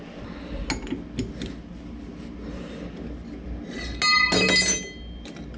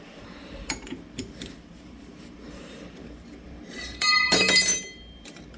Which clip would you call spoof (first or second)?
second